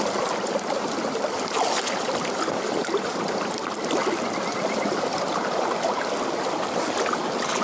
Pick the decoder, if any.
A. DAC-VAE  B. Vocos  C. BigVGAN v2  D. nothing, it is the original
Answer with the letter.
D